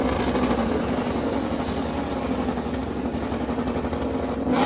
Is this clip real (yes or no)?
yes